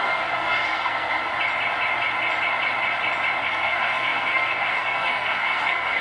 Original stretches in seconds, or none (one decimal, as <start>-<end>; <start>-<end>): 1.3-3.4